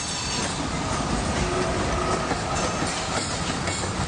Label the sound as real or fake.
real